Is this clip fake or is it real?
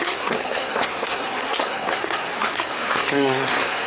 fake